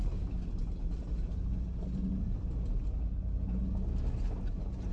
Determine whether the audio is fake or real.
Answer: real